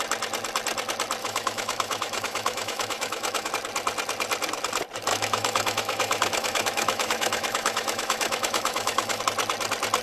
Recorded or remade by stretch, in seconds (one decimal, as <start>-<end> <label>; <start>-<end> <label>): 0.0-1.2 recorded; 1.2-3.5 remade; 3.5-5.1 recorded; 5.1-9.2 remade; 9.2-10.0 recorded